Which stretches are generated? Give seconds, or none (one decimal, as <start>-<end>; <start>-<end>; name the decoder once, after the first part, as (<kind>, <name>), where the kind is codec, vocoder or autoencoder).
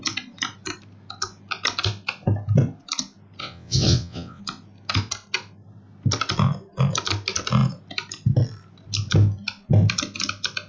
3.4-4.4 (vocoder, WaveNeXt)